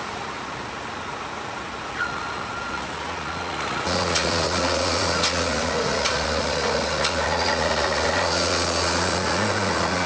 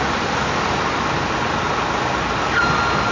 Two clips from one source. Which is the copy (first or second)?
first